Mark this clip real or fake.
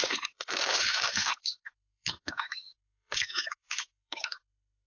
fake